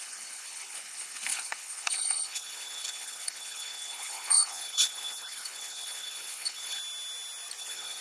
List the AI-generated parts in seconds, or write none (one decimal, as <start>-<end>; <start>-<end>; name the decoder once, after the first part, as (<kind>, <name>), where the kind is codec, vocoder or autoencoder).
0.0-6.8 (codec, HILCodec); 7.6-8.0